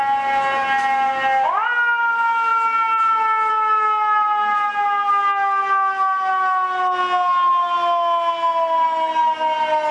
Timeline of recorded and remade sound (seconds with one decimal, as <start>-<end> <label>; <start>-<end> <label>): 0.0-9.9 recorded